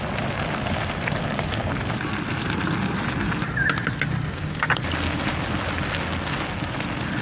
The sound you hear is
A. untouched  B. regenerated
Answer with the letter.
A